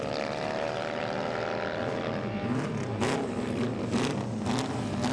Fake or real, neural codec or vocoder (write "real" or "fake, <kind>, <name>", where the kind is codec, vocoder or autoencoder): real